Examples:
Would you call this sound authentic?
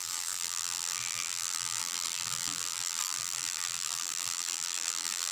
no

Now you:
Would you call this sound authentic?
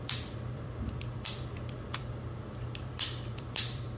no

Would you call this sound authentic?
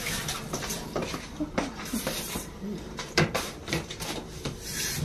no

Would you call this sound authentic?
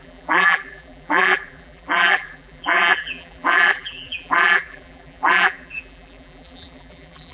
no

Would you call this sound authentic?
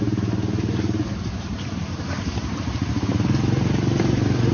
no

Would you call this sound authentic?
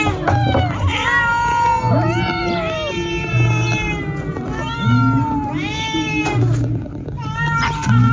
yes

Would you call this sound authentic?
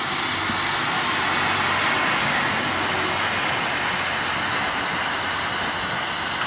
yes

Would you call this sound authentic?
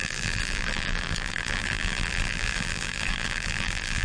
no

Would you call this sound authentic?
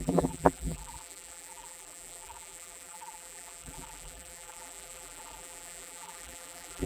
no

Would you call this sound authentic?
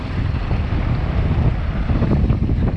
yes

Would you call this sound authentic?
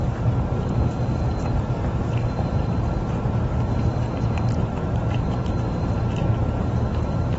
no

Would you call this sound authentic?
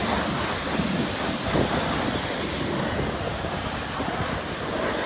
no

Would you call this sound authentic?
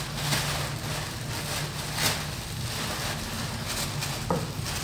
yes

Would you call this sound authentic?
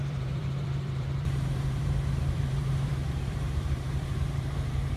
no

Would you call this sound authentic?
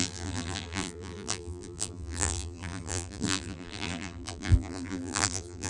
no